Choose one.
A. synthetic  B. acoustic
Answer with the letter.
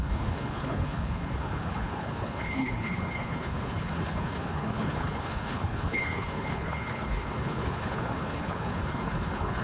A